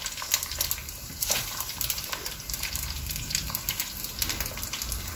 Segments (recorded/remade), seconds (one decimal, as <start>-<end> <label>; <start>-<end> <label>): 0.0-0.8 recorded; 0.8-3.9 remade; 3.9-5.2 recorded